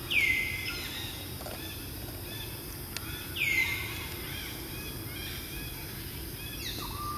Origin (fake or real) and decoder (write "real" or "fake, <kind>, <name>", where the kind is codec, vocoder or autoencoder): real